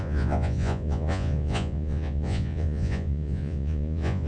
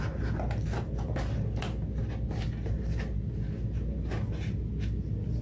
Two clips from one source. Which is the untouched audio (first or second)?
second